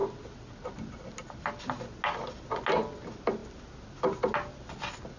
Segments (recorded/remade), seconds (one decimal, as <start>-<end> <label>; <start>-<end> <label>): 0.0-5.2 recorded